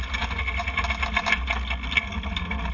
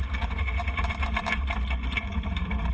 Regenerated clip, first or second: second